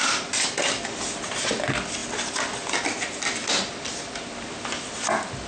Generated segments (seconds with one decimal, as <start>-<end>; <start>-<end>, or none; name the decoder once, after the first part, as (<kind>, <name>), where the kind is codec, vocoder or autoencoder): none